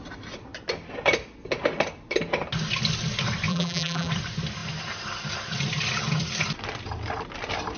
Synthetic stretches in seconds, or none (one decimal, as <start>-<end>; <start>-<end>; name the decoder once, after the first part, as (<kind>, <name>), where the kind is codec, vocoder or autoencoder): 3.5-4.1 (vocoder, BigVGAN v2)